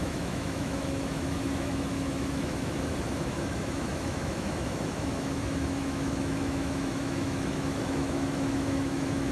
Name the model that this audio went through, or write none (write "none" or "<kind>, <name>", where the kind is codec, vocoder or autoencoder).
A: autoencoder, DAC-VAE